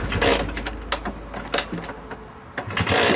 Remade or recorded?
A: recorded